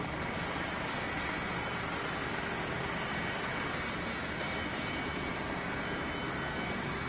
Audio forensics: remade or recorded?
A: recorded